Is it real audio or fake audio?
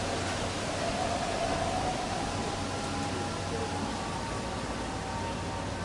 real